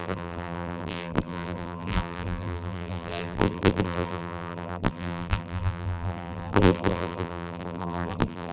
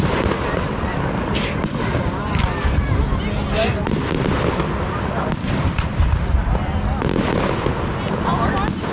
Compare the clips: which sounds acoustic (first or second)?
second